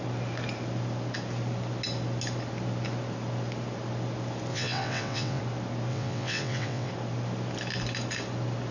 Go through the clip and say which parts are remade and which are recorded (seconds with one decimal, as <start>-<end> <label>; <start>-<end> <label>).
0.0-4.5 recorded; 4.5-5.4 remade; 5.4-5.9 recorded; 5.9-6.9 remade; 6.9-8.7 recorded